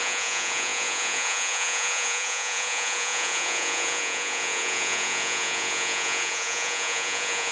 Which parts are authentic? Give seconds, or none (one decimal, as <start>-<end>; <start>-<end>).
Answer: none